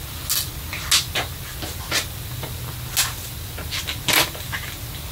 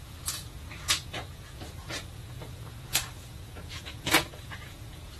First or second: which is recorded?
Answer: first